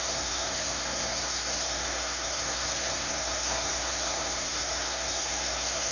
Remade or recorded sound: remade